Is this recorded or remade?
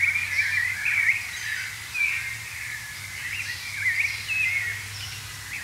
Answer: recorded